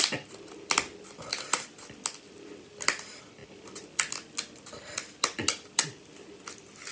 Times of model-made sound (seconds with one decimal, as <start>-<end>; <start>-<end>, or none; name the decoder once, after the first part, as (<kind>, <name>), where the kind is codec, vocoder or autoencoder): none

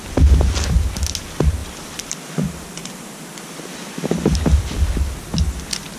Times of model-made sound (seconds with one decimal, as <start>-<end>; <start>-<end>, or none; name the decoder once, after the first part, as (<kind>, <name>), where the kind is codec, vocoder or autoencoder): 1.6-5.0 (vocoder, BigVGAN v2)

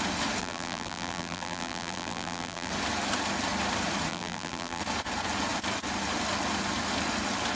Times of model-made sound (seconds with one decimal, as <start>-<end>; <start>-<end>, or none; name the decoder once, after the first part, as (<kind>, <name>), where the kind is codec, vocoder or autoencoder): 0.4-2.7 (vocoder, BigVGAN v2); 4.1-4.8

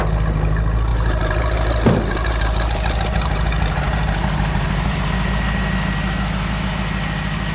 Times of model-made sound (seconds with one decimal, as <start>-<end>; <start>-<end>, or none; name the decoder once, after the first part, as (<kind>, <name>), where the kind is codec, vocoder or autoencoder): 0.9-5.0 (vocoder, BigVGAN v2)

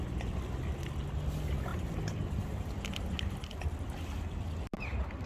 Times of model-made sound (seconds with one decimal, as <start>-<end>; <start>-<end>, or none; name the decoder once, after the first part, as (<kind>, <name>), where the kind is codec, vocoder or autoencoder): none